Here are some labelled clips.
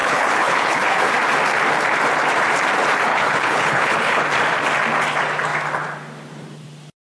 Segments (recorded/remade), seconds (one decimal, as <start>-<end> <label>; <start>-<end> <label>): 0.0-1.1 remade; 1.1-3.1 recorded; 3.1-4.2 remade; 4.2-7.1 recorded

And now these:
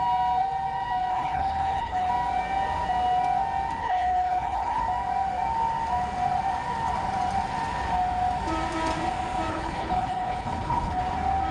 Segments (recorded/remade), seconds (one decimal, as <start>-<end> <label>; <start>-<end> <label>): 0.0-1.1 recorded; 1.1-2.1 remade; 2.1-3.8 recorded; 3.8-4.8 remade; 4.8-9.5 recorded; 9.5-11.0 remade; 11.0-11.5 recorded

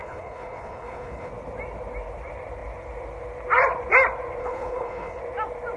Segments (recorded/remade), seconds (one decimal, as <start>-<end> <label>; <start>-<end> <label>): 0.0-1.3 remade; 1.3-4.4 recorded; 4.4-5.2 remade; 5.2-5.8 recorded

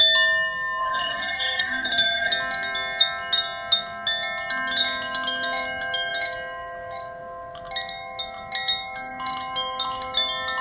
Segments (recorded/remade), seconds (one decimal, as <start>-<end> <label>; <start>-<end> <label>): 0.0-0.8 recorded; 0.8-2.3 remade; 2.3-10.6 recorded

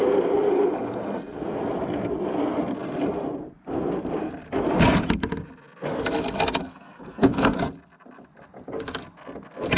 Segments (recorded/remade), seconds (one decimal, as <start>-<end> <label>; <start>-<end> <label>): 0.0-6.6 recorded; 6.6-7.6 remade; 7.6-9.8 recorded

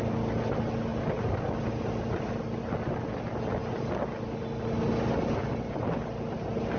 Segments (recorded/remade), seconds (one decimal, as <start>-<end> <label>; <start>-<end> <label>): 0.0-6.8 recorded

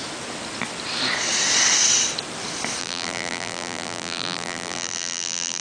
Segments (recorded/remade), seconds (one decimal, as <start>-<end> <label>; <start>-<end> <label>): 0.0-2.8 recorded; 2.8-5.6 remade

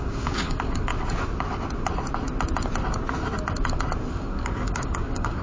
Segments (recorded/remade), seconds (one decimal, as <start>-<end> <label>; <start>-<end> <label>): 0.0-0.9 remade; 0.9-4.1 recorded; 4.1-5.4 remade